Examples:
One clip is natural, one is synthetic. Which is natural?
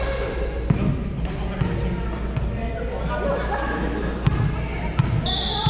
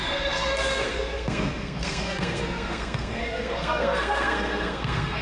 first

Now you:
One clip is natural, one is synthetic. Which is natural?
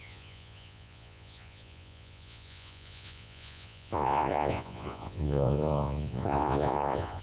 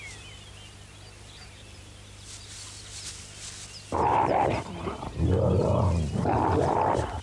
second